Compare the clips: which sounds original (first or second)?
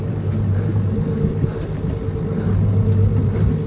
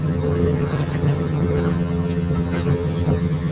first